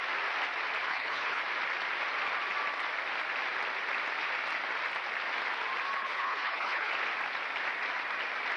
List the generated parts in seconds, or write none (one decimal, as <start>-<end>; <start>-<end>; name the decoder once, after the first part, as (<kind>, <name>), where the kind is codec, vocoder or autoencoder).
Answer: 0.9-1.4 (codec, HILCodec); 6.0-6.9